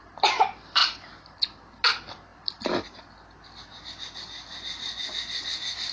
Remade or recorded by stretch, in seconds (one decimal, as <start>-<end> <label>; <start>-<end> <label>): 0.0-5.9 recorded